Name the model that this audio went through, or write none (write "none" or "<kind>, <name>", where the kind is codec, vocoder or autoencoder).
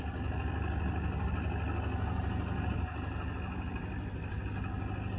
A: none